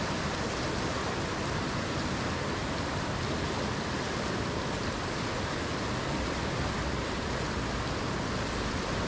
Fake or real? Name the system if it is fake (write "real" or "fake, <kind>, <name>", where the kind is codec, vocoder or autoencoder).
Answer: real